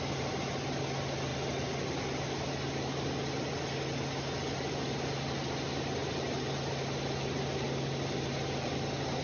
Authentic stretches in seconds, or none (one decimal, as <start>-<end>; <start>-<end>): 0.0-9.2

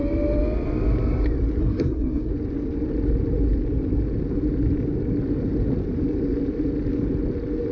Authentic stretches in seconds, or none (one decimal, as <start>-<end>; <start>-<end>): 0.0-1.6; 2.3-7.7

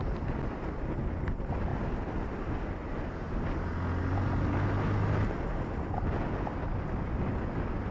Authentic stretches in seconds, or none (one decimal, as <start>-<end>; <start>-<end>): 0.0-7.9

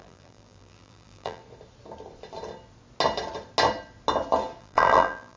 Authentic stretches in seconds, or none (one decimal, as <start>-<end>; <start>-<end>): 1.4-4.6

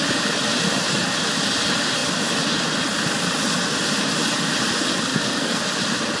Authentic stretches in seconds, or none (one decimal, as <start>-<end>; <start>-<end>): 0.0-5.1; 5.6-6.2

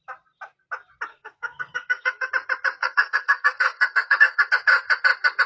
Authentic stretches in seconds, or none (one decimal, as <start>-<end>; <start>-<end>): 0.0-1.1; 2.3-2.8; 4.5-5.5

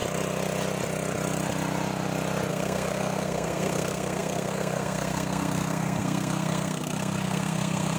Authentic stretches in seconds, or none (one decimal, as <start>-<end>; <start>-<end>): 0.0-2.5

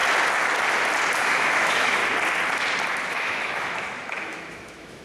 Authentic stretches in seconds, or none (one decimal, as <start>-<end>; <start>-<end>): 0.0-1.2; 2.0-3.1